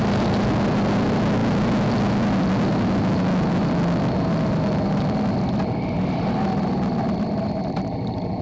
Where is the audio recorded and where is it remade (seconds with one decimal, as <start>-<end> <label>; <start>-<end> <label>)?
0.0-8.4 recorded